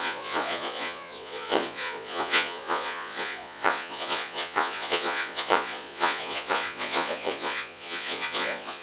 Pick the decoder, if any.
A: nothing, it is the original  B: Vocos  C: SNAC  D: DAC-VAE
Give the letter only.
B